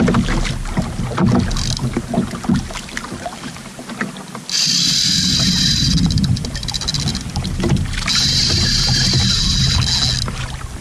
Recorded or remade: recorded